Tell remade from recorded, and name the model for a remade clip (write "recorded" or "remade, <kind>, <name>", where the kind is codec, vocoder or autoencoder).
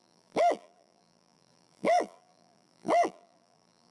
remade, vocoder, BigVGAN v2